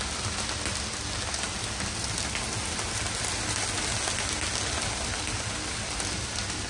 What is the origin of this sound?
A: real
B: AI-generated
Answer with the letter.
A